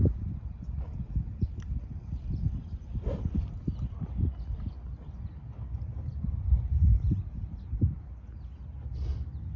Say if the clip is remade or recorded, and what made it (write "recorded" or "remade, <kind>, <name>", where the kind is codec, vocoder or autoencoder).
recorded